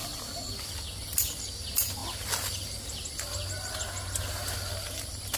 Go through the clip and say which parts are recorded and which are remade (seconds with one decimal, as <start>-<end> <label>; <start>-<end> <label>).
0.0-5.4 recorded